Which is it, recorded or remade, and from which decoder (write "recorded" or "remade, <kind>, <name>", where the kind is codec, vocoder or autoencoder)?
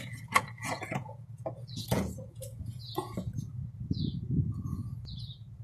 remade, vocoder, Vocos